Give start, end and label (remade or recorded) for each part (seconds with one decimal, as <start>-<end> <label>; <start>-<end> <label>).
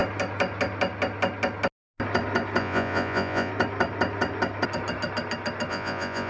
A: 0.0-2.6 recorded; 2.6-3.5 remade; 3.5-5.7 recorded; 5.7-6.3 remade